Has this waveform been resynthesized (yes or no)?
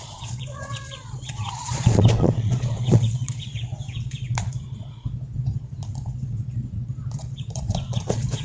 yes